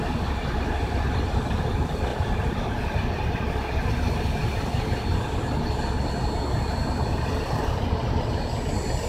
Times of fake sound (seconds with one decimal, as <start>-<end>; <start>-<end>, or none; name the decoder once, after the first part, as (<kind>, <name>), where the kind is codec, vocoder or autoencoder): 2.1-3.9 (vocoder, BigVGAN v2)